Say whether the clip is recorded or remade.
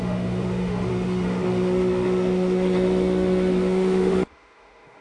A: remade